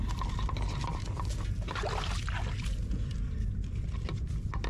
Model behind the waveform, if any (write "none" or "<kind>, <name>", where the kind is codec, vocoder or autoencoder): none